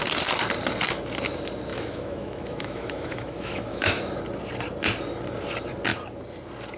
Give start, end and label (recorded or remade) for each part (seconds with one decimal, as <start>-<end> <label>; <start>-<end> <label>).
0.0-1.7 recorded; 1.7-4.2 remade; 4.2-6.8 recorded